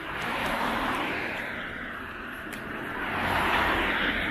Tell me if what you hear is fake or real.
fake